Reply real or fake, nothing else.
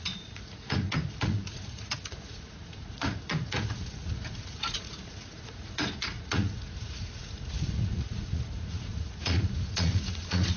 fake